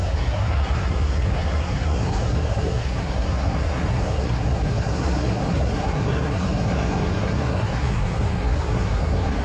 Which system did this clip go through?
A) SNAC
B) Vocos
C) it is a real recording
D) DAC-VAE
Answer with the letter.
A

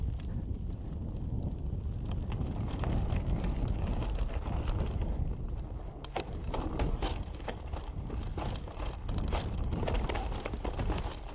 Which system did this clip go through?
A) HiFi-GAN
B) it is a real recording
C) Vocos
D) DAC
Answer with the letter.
B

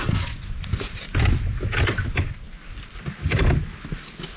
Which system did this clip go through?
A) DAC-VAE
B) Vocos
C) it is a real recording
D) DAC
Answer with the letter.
C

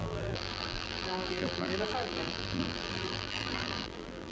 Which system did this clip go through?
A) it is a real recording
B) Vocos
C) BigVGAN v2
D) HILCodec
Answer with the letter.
C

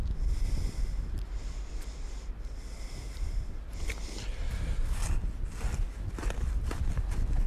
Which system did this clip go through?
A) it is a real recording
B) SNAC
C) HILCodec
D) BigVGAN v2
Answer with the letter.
A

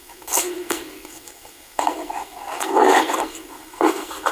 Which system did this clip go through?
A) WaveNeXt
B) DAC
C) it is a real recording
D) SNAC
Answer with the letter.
D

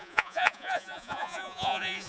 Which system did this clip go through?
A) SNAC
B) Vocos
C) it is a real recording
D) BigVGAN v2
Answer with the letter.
B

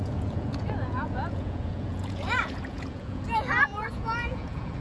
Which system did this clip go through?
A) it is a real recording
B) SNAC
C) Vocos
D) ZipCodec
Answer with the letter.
C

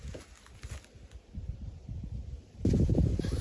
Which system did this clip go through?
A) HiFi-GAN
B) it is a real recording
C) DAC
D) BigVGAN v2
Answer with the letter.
B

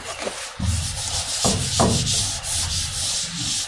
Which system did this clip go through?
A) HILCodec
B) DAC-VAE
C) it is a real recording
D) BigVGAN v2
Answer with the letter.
C